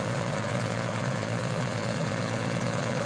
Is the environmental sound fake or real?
fake